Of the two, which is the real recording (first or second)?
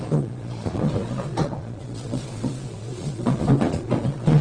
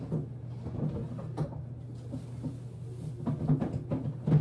second